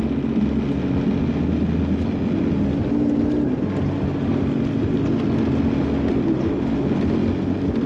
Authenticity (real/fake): real